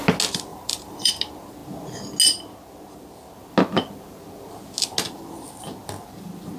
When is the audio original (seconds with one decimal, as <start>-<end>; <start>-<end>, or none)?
0.0-0.5; 1.1-6.6